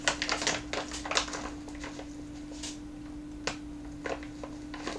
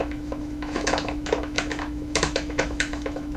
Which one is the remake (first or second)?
second